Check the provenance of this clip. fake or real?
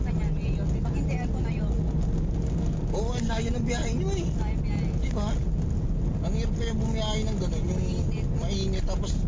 real